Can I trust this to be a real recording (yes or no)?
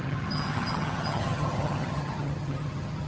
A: no